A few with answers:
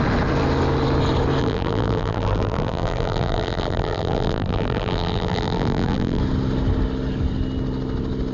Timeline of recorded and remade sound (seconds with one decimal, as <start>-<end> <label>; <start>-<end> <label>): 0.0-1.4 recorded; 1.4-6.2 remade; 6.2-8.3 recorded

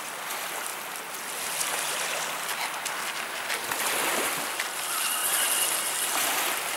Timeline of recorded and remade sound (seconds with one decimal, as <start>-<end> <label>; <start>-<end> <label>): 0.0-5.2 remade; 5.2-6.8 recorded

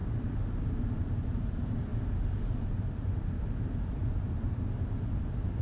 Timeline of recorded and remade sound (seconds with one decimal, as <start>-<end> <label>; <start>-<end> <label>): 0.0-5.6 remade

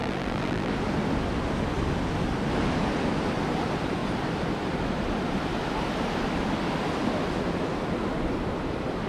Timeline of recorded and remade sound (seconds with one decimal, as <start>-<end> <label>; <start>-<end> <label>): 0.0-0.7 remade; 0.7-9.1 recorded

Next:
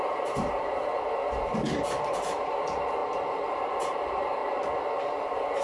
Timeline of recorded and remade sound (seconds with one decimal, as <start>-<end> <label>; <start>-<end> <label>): 0.0-4.4 remade; 4.4-5.6 recorded